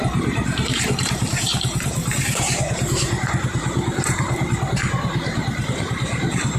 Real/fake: fake